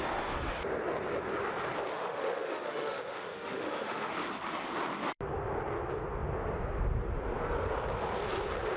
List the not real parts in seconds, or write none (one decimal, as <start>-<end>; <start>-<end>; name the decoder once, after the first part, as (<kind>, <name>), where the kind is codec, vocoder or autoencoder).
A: 1.9-4.1 (autoencoder, DAC-VAE)